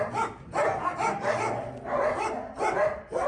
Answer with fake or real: real